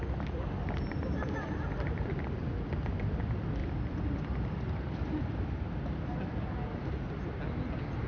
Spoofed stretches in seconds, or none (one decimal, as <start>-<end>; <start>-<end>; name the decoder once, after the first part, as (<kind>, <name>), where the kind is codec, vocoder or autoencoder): 3.6-5.2 (vocoder, BigVGAN v2)